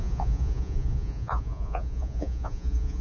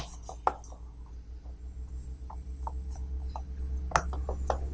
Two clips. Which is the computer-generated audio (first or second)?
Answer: first